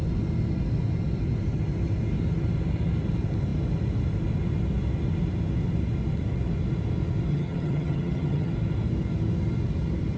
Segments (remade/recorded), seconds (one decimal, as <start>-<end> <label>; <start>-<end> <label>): 0.0-7.3 recorded; 7.3-8.5 remade; 8.5-10.2 recorded